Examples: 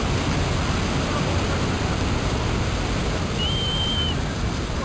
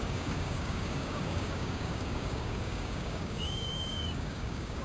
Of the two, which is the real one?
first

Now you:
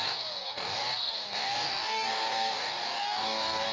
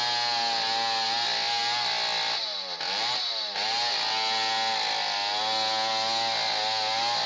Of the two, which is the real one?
second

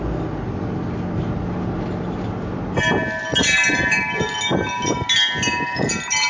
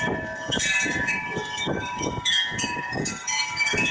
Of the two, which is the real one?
first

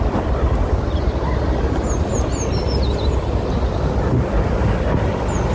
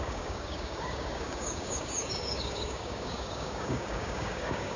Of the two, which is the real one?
first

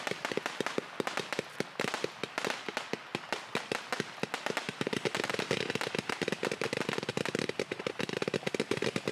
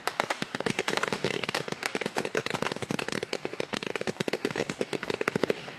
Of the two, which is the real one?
first